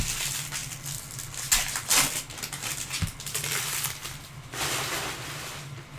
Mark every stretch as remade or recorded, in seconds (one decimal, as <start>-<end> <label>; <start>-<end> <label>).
0.0-6.0 recorded